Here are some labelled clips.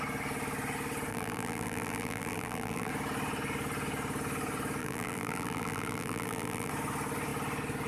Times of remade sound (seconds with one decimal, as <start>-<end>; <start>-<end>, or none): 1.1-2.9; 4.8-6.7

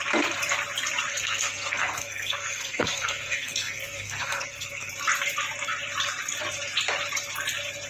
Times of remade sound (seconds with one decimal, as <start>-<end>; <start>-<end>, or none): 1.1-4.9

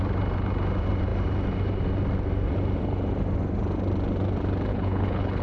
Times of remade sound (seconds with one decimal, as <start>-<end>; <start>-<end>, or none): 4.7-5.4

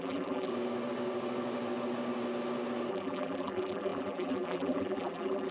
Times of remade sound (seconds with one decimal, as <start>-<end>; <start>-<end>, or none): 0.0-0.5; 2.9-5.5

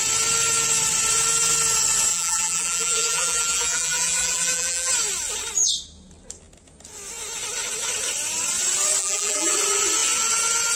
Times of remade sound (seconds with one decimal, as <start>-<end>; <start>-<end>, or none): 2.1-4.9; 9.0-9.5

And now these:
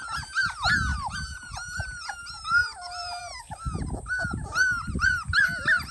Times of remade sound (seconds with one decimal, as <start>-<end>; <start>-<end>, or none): 0.9-3.2

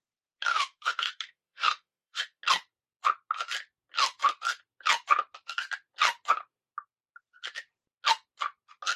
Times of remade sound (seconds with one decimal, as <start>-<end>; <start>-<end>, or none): 0.5-2.4

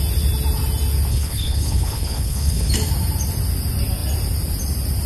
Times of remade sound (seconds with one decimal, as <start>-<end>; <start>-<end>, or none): 1.1-2.7